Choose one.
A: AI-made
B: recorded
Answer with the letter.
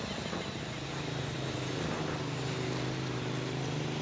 B